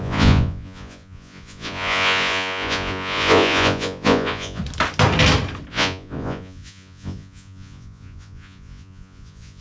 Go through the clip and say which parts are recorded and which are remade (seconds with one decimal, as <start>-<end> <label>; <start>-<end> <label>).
0.0-4.6 remade; 4.6-5.7 recorded; 5.7-9.6 remade